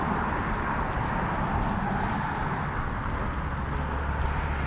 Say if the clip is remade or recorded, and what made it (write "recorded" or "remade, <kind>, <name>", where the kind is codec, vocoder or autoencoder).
recorded